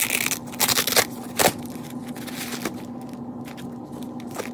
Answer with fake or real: real